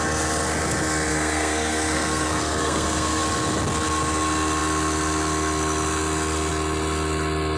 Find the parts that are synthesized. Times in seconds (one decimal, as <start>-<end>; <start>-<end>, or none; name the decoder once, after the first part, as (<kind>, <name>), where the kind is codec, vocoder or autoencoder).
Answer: 1.1-3.2 (codec, SNAC)